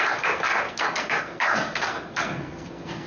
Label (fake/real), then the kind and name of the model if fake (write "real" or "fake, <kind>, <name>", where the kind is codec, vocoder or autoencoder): fake, codec, SNAC